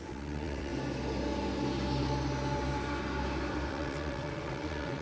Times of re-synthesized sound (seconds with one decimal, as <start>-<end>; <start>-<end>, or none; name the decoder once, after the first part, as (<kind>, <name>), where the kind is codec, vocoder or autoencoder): 0.0-0.7 (vocoder, WaveNeXt); 3.7-5.0